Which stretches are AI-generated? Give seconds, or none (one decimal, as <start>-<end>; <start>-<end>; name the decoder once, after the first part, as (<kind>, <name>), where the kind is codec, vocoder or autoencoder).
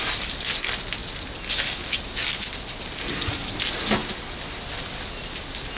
none